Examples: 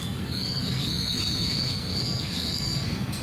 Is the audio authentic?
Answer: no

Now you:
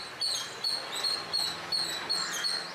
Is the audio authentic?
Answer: yes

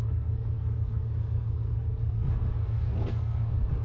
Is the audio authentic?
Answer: no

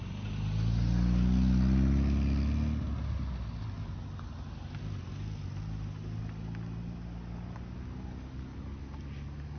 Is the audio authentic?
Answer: yes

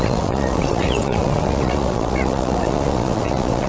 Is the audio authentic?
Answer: no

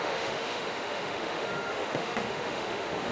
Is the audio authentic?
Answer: no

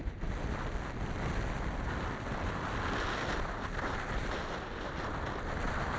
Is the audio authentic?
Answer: yes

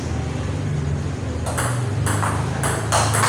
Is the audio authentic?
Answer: yes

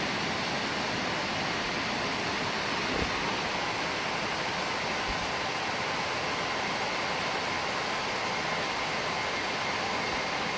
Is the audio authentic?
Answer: yes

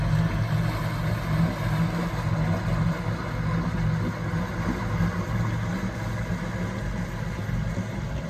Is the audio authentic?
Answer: yes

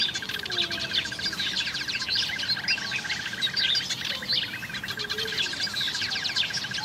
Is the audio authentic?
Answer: no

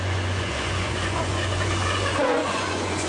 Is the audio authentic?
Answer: no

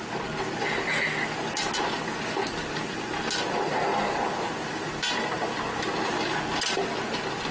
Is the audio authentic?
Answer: yes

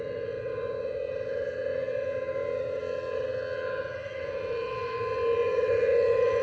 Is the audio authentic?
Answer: no